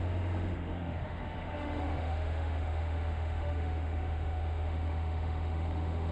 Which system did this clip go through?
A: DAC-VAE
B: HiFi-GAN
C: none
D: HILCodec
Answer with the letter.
A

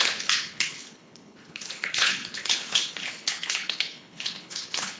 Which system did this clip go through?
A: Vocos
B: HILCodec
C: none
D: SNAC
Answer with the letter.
B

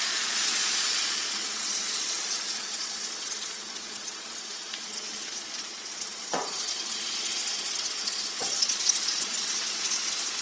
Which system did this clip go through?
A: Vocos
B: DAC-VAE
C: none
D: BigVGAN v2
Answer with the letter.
A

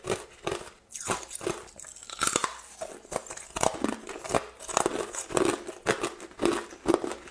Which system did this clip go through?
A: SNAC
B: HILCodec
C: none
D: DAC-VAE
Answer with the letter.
C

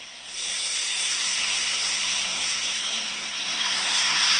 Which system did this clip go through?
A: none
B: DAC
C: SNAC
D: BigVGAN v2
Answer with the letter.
C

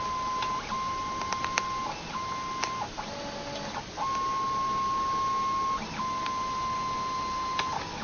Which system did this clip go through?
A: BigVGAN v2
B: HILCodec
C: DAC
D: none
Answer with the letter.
D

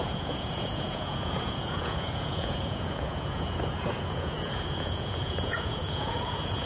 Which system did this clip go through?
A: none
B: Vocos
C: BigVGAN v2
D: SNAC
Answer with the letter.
B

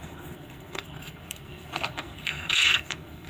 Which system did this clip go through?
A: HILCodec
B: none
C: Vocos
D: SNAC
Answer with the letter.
D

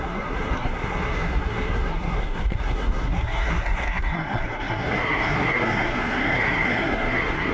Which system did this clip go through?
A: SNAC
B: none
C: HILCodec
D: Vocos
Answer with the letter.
A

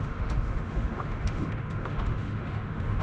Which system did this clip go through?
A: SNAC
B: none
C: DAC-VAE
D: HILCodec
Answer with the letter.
C